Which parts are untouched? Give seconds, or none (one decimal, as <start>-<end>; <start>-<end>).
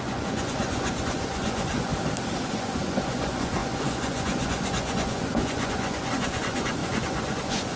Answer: 1.9-2.5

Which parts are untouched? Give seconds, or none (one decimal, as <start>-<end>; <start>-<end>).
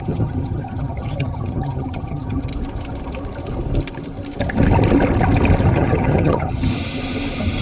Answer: 2.5-5.7; 6.7-7.6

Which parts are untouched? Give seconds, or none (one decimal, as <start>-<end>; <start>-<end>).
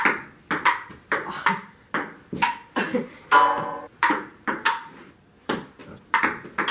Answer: 0.0-3.1; 5.8-6.7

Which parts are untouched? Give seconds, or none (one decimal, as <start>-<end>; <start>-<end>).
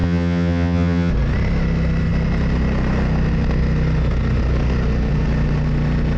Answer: 1.1-6.2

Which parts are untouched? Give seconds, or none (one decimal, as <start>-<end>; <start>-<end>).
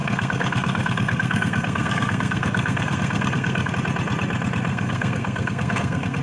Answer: 3.7-4.7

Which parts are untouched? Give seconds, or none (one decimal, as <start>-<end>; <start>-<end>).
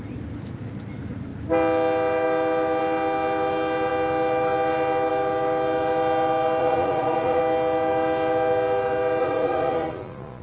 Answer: 0.0-6.6; 7.4-9.2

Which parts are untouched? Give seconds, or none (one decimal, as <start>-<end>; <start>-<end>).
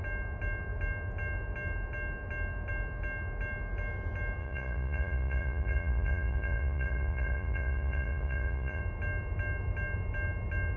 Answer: 0.0-4.4; 8.8-10.8